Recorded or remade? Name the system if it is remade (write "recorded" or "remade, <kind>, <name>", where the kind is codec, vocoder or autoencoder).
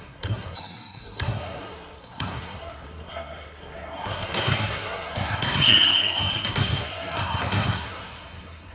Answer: remade, codec, SNAC